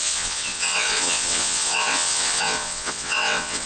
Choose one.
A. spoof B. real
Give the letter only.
A